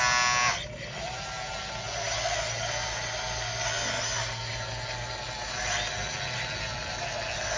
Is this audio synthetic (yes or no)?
no